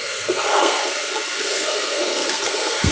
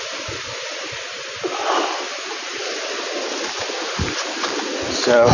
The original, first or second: second